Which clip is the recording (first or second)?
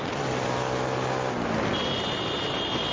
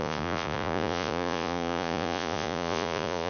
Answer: first